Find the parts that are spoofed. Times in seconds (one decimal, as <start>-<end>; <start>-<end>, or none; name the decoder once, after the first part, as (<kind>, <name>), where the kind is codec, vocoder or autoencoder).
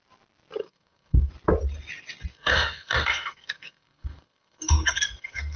0.6-1.3 (codec, SNAC); 2.3-5.6